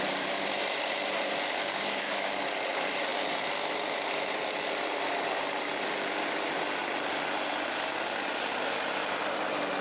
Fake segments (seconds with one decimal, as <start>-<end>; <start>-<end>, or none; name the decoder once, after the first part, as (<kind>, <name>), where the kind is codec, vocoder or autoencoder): 1.7-2.3 (codec, DAC)